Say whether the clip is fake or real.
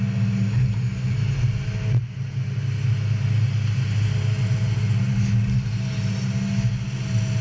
real